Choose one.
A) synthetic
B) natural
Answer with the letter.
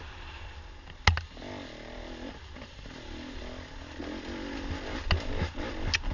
B